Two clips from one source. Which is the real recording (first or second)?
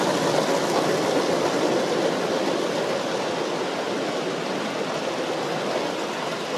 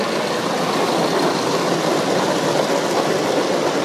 first